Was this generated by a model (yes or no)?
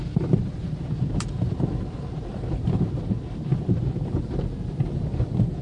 yes